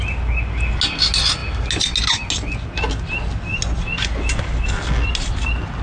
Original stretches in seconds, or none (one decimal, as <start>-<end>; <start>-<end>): 0.0-5.8